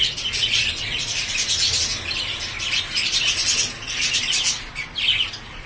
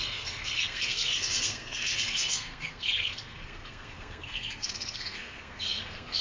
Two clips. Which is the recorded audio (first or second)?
first